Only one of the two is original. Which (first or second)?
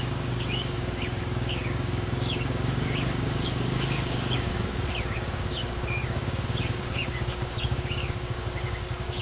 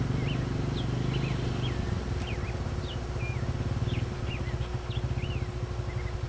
second